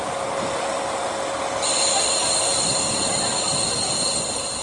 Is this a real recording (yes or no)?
yes